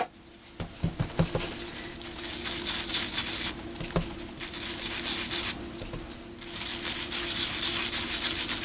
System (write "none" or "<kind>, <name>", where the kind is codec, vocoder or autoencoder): none